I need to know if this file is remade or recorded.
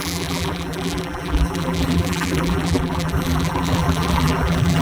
remade